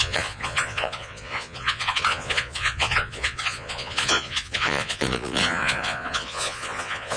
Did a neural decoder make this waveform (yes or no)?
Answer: yes